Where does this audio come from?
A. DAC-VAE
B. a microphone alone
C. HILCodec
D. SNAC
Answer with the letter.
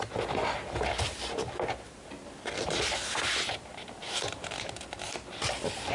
B